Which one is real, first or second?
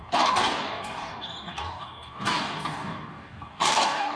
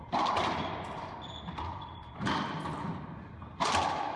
second